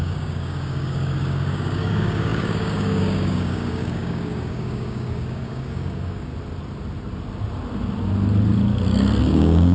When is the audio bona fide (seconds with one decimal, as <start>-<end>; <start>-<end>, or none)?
6.3-9.2